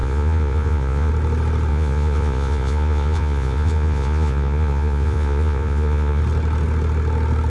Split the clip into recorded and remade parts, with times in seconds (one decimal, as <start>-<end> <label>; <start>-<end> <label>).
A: 0.0-1.1 remade; 1.1-1.7 recorded; 1.7-6.2 remade; 6.2-7.5 recorded